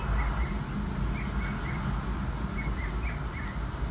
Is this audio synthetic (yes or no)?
no